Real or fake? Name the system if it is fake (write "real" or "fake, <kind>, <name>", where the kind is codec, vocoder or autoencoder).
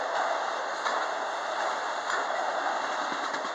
real